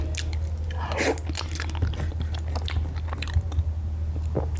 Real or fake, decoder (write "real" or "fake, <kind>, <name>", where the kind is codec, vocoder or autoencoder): real